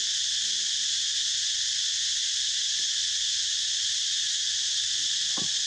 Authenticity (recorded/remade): recorded